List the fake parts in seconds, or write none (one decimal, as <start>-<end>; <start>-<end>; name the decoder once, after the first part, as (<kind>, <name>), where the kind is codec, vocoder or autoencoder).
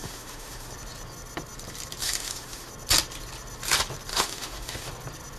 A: 0.0-0.7 (autoencoder, DAC-VAE); 2.0-2.7; 4.1-4.9